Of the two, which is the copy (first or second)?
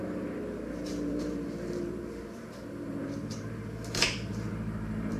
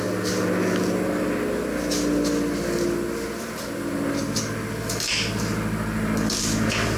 first